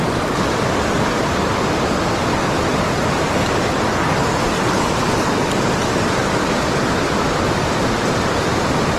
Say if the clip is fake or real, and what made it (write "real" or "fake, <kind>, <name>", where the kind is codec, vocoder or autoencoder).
real